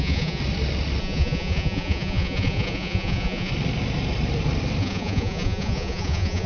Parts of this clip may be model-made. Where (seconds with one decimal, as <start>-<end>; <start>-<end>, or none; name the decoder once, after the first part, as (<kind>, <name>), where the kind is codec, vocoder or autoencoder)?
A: 0.0-0.4 (vocoder, Vocos); 1.0-3.5; 4.8-6.5